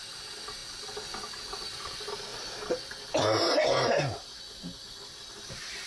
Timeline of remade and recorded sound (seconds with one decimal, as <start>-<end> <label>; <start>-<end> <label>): 0.0-5.9 recorded